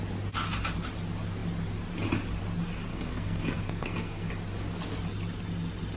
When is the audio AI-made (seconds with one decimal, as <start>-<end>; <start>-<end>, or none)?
2.9-4.3